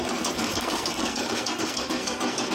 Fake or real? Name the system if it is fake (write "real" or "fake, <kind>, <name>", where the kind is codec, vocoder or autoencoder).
fake, codec, SNAC